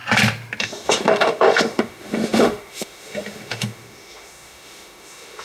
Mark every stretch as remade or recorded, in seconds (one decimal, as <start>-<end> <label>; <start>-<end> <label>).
0.0-0.6 recorded; 0.6-5.4 remade